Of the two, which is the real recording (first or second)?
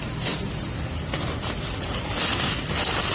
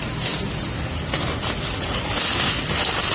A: second